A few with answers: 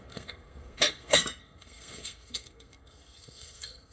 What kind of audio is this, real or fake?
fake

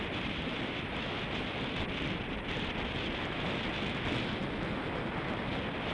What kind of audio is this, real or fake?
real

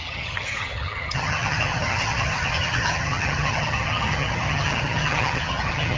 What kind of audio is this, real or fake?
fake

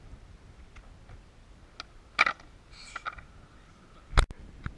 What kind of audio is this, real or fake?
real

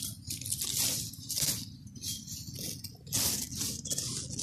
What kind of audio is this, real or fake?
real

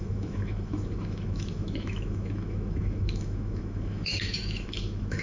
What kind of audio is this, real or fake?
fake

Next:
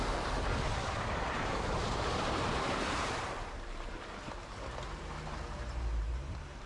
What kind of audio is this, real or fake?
fake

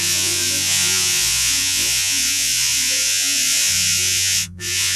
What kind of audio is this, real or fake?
fake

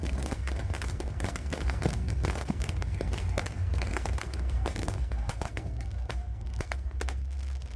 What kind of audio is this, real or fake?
fake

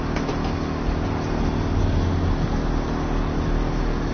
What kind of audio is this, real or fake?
real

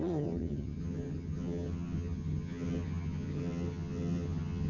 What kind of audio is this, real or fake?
fake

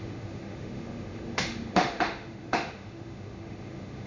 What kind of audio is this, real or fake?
fake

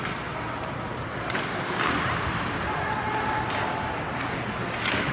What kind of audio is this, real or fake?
real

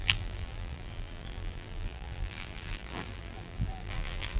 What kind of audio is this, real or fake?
fake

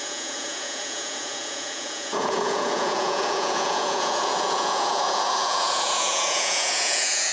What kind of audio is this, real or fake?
fake